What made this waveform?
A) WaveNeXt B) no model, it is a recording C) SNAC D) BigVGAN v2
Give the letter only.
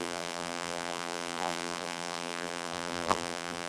D